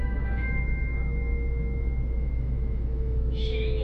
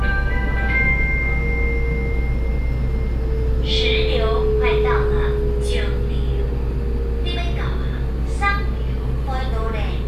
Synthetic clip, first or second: first